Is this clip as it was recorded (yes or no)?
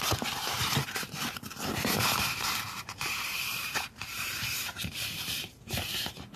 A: no